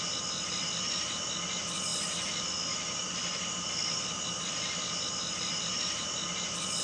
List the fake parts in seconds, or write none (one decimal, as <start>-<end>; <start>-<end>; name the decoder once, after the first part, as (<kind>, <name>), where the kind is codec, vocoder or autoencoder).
none